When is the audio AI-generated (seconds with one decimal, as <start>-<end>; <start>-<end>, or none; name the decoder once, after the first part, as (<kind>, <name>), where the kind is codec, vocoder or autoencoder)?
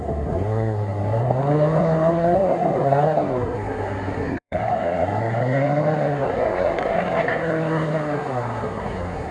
0.0-9.3 (codec, SNAC)